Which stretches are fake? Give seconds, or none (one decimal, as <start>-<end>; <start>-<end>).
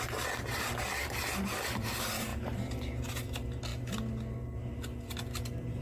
none